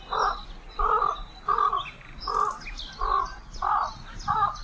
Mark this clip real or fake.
real